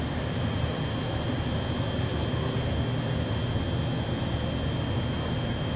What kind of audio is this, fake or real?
real